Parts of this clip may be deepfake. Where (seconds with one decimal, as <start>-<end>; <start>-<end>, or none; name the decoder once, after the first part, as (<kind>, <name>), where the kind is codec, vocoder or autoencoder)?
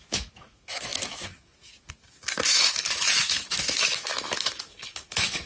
0.0-5.5 (autoencoder, DAC-VAE)